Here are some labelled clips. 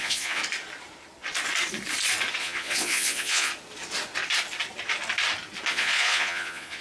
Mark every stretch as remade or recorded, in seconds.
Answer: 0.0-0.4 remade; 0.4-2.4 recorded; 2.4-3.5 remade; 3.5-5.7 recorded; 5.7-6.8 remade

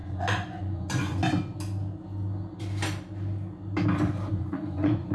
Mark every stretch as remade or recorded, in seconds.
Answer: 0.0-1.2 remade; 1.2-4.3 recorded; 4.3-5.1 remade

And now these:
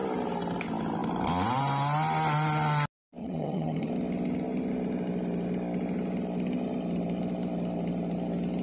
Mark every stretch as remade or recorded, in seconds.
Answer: 0.0-3.2 recorded; 3.2-3.9 remade; 3.9-8.6 recorded

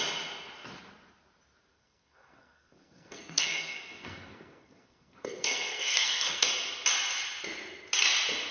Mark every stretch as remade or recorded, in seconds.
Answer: 0.0-1.7 recorded; 1.7-6.5 remade; 6.5-8.5 recorded

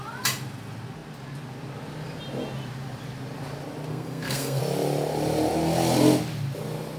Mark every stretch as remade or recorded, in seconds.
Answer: 0.0-3.9 recorded; 3.9-4.6 remade; 4.6-7.0 recorded

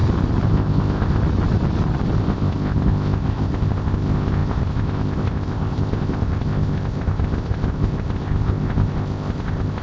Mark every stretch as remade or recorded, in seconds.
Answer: 0.0-0.5 recorded; 0.5-1.2 remade; 1.2-2.2 recorded; 2.2-9.8 remade

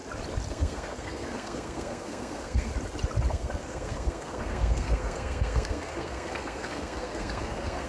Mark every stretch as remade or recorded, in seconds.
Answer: 0.0-0.5 recorded; 0.5-2.7 remade; 2.7-3.3 recorded; 3.3-7.9 remade